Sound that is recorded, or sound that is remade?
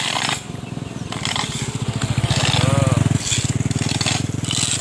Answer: recorded